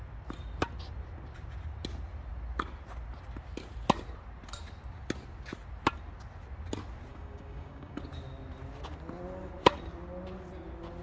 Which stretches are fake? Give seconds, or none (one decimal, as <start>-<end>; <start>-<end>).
7.1-8.0